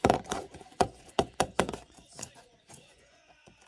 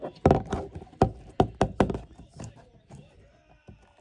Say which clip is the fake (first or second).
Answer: first